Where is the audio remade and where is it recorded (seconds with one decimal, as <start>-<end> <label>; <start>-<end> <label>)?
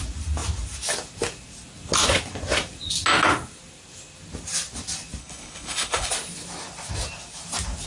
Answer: 0.0-5.2 recorded; 5.2-6.1 remade; 6.1-7.9 recorded